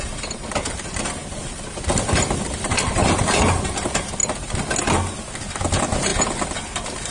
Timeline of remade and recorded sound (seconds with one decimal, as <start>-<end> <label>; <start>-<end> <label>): 0.0-7.1 recorded